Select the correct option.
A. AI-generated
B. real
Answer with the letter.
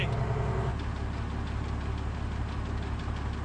B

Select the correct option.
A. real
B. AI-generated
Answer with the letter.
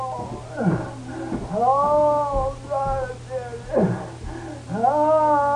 A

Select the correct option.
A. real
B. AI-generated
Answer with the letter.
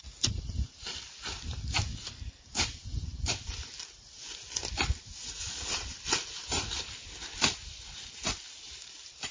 A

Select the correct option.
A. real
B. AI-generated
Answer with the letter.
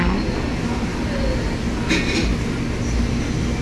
A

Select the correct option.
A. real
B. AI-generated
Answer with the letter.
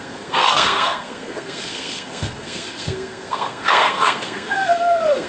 B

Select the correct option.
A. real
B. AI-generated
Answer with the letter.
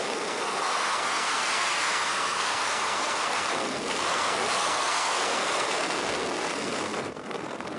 B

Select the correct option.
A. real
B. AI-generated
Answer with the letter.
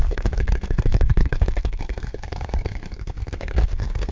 B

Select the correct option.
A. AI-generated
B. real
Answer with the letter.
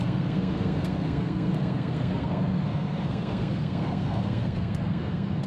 A